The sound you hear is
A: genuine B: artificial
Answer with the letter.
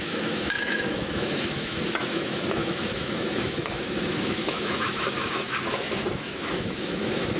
B